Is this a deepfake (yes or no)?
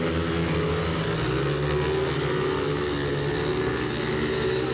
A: no